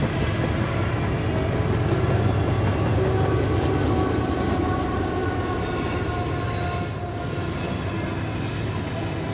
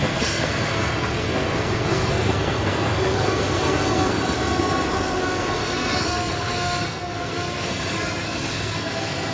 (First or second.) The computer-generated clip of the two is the second